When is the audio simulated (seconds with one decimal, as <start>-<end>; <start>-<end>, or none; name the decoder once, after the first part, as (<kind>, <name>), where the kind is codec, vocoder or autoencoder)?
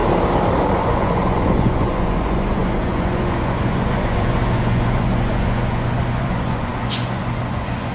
0.6-7.9 (vocoder, Vocos)